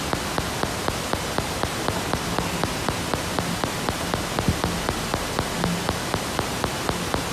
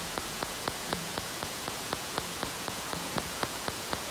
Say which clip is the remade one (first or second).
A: second